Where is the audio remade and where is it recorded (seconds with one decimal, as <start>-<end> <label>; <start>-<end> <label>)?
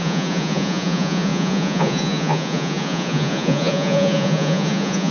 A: 0.0-5.1 remade